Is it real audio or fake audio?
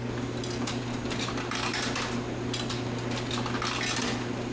real